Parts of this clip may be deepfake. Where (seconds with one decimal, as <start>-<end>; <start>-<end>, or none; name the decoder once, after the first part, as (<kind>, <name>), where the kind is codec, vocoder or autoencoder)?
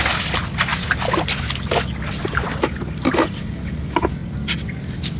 none